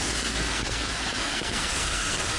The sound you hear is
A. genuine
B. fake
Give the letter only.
B